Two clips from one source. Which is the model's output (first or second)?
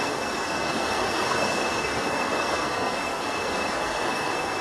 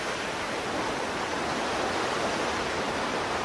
first